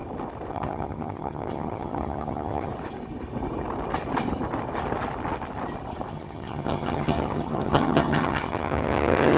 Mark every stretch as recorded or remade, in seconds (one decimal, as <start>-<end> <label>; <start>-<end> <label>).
0.0-0.5 recorded; 0.5-2.7 remade; 2.7-6.1 recorded; 6.1-9.4 remade

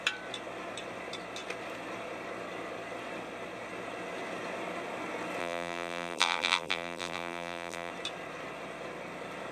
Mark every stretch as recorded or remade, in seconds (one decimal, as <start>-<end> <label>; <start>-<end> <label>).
0.0-5.4 recorded; 5.4-7.9 remade; 7.9-9.5 recorded

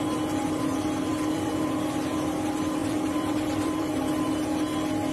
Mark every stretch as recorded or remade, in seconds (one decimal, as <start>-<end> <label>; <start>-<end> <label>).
0.0-1.1 recorded; 1.1-1.7 remade; 1.7-2.8 recorded; 2.8-3.9 remade; 3.9-5.1 recorded

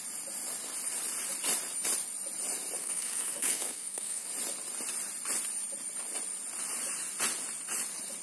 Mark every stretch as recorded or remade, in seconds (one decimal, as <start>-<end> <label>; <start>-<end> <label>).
0.0-2.8 recorded; 2.8-4.3 remade; 4.3-8.2 recorded

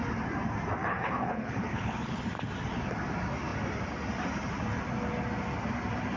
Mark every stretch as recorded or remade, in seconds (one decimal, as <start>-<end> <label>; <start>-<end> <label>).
0.0-0.8 recorded; 0.8-2.2 remade; 2.2-6.2 recorded